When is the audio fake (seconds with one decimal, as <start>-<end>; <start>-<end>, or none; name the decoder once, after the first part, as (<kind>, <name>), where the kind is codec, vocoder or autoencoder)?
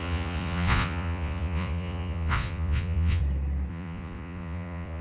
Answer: 0.0-3.2 (vocoder, Vocos); 3.7-5.0